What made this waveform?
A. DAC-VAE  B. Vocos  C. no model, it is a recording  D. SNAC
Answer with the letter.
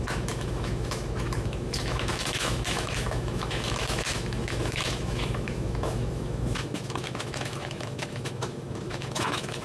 A